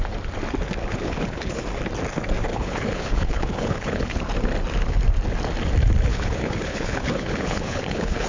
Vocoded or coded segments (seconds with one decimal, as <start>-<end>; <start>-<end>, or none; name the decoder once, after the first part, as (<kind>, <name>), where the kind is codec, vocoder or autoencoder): 0.8-1.6 (codec, HILCodec); 2.5-4.2; 6.1-8.3